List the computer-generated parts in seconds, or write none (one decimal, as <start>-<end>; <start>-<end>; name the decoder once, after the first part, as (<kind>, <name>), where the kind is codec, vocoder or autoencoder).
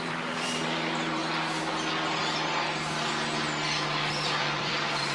0.0-1.2 (vocoder, BigVGAN v2); 4.1-5.1